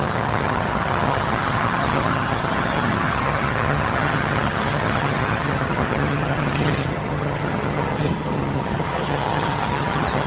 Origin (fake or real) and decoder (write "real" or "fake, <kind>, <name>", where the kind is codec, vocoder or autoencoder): fake, vocoder, HiFi-GAN